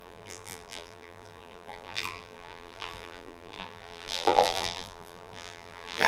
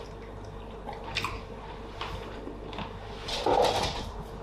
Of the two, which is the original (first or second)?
second